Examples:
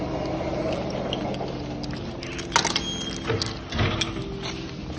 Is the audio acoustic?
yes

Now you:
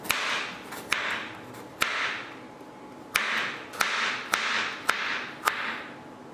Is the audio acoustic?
yes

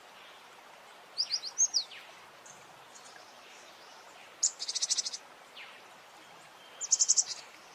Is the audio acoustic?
yes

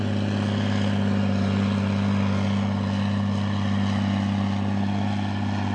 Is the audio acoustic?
yes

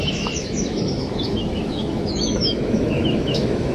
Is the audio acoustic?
no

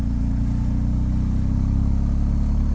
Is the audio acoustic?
no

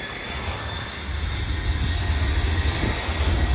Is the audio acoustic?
yes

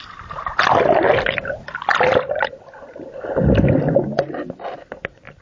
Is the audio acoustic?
yes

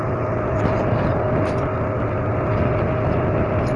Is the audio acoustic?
yes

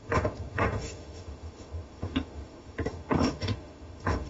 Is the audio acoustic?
no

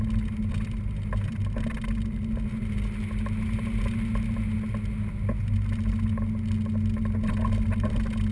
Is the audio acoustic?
yes